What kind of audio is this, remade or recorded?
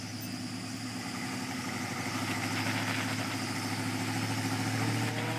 recorded